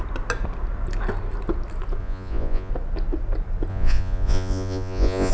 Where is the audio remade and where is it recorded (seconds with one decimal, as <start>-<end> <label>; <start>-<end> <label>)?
0.0-2.0 recorded; 2.0-2.7 remade; 2.7-3.7 recorded; 3.7-5.3 remade